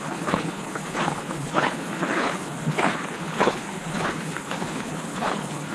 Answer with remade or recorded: remade